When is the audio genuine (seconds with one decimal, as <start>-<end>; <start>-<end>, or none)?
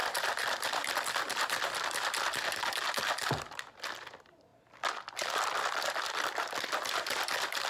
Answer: 4.5-5.1